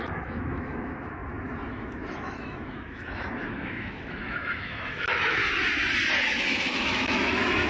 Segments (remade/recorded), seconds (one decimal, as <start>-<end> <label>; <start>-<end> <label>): 0.0-1.2 remade; 1.2-1.7 recorded; 1.7-5.4 remade; 5.4-6.2 recorded; 6.2-7.7 remade